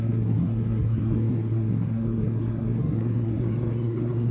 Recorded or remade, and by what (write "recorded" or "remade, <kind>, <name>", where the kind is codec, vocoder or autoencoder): remade, codec, SNAC